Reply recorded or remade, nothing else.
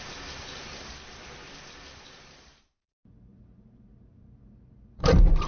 recorded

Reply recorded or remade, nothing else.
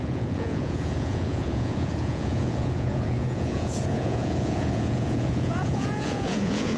remade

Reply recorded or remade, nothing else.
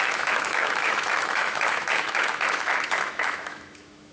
remade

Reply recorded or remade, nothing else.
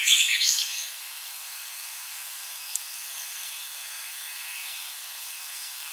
remade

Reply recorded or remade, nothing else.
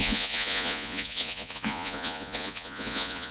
remade